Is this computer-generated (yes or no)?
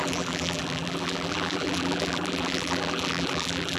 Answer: yes